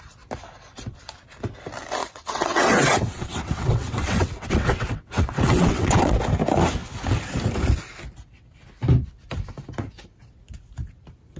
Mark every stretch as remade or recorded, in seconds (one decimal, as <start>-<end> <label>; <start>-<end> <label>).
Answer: 0.0-2.0 recorded; 2.0-6.2 remade; 6.2-11.4 recorded